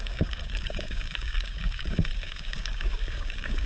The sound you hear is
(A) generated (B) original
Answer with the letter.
A